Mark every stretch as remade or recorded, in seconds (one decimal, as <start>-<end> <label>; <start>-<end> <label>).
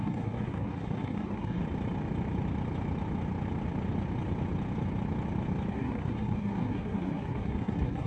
0.0-1.6 remade; 1.6-5.7 recorded; 5.7-8.1 remade